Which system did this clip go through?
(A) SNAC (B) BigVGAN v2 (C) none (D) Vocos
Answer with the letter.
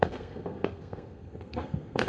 A